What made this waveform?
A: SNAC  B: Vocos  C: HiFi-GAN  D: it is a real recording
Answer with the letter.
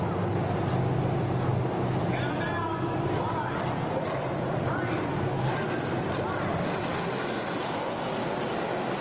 D